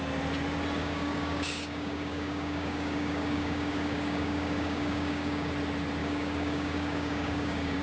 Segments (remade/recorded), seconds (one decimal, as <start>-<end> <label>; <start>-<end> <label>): 0.0-0.8 recorded; 0.8-5.5 remade; 5.5-6.0 recorded; 6.0-7.8 remade